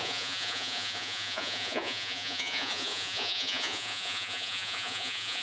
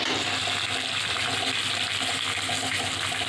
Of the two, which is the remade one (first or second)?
first